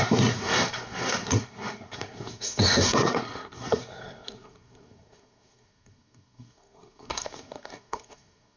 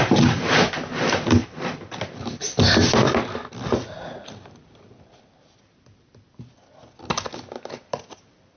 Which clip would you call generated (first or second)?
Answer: first